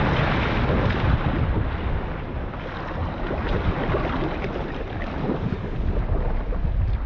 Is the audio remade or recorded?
recorded